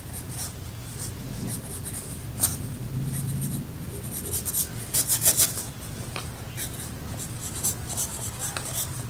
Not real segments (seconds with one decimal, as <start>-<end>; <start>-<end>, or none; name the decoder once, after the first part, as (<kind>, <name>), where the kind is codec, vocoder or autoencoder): none